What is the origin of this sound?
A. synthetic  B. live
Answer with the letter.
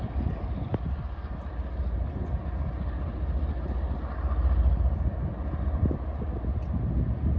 B